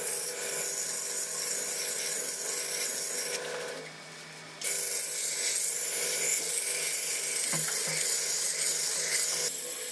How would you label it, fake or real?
real